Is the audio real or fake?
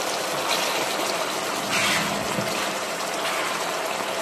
real